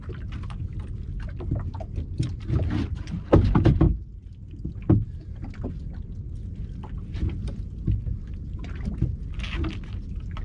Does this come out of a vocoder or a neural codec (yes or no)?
no